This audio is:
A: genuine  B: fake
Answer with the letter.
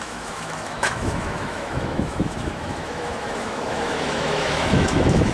B